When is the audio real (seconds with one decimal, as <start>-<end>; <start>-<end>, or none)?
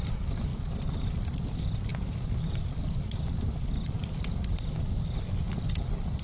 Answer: 0.0-6.2